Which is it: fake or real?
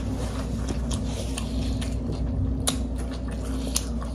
real